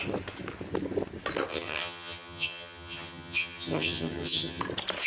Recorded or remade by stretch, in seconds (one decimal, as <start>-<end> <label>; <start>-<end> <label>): 0.0-1.5 recorded; 1.5-4.6 remade; 4.6-5.1 recorded